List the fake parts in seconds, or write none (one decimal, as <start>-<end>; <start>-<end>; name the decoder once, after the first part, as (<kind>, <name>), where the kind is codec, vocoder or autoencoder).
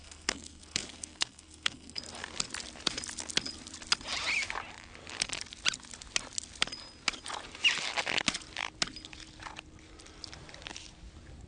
0.0-2.0 (codec, SNAC)